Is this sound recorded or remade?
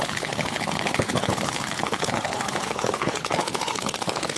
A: remade